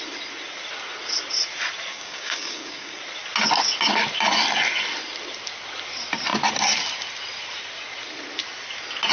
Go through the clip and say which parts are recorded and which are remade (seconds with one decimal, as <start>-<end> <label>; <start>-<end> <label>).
0.0-1.9 recorded; 1.9-3.0 remade; 3.0-9.1 recorded